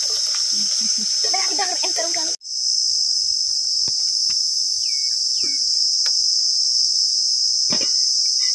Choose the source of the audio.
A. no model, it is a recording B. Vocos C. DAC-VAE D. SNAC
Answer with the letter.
A